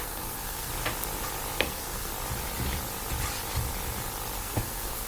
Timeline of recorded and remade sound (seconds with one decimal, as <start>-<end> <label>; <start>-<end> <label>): 0.0-0.7 remade; 0.7-1.6 recorded; 1.6-2.1 remade; 2.1-4.4 recorded; 4.4-5.1 remade